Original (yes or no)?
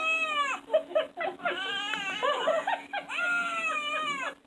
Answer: yes